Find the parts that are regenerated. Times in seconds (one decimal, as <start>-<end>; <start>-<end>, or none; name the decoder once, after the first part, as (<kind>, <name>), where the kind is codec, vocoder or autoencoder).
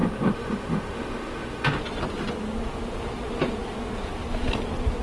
0.0-1.8 (autoencoder, DAC-VAE)